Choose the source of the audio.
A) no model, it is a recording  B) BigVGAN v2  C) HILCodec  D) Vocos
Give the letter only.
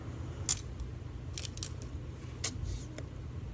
A